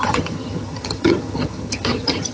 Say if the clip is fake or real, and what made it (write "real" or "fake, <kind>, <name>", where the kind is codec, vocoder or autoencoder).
fake, vocoder, HiFi-GAN